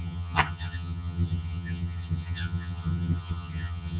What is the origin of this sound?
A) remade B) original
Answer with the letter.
A